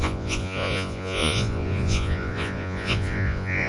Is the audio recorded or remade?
remade